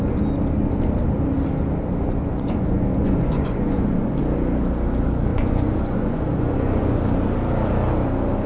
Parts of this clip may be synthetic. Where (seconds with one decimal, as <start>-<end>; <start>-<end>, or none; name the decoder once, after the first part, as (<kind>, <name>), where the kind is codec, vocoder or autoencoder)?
2.2-4.2 (vocoder, Vocos); 5.3-7.0